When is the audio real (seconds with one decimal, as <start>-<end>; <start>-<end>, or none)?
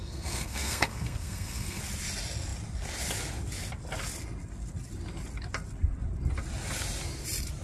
1.8-7.6